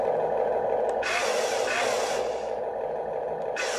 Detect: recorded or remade recorded